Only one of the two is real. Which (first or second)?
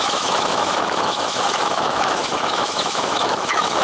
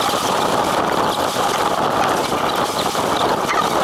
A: second